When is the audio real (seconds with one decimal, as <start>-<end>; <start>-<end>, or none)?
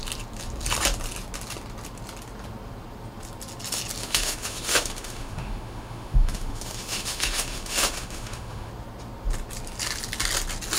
0.0-4.0; 8.7-10.8